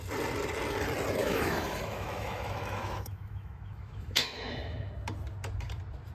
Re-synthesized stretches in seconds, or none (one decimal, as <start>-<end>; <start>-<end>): 1.2-4.9